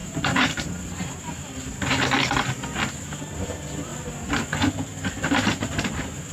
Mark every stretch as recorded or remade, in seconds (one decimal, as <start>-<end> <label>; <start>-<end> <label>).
0.0-1.7 remade; 1.7-3.0 recorded; 3.0-3.9 remade; 3.9-5.1 recorded; 5.1-6.3 remade